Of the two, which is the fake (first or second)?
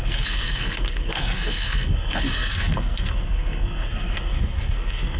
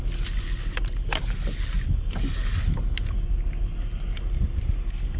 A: first